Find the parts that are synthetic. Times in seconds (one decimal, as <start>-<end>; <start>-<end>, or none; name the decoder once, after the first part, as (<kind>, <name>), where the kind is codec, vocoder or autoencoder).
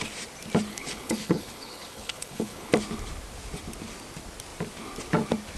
0.7-2.7 (codec, HILCodec)